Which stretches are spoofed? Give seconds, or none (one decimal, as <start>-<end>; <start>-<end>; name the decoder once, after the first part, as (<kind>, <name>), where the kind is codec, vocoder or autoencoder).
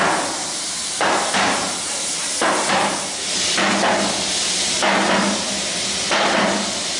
0.4-3.1 (vocoder, BigVGAN v2); 4.4-5.7